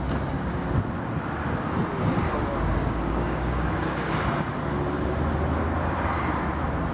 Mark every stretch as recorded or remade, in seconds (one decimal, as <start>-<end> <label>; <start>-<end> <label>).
0.0-2.5 recorded; 2.5-4.1 remade; 4.1-6.9 recorded